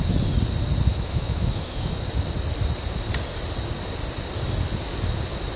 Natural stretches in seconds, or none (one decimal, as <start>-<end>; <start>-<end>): 0.0-0.9; 1.9-5.6